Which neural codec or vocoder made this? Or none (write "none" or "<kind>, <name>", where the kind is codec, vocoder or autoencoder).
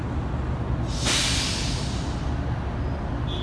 none